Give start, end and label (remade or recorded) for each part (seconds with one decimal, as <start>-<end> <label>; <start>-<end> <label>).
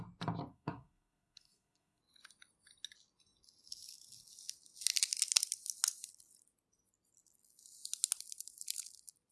0.0-0.5 recorded; 0.5-2.0 remade; 2.0-9.3 recorded